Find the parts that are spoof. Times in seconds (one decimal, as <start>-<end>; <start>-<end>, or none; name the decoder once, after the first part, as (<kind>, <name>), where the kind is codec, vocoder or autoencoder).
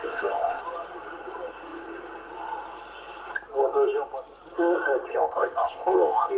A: 0.0-0.6 (codec, ZipCodec); 5.1-6.4